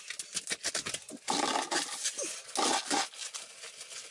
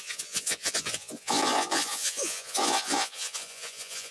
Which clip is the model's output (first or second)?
second